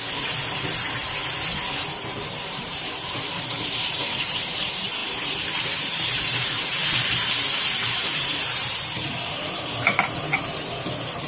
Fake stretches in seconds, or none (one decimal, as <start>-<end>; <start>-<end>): 0.0-1.0; 1.9-11.3